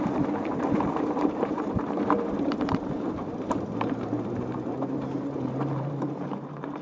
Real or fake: fake